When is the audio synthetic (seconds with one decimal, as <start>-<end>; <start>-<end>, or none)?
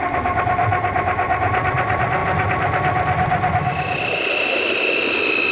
none